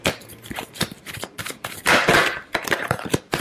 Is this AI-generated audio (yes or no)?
yes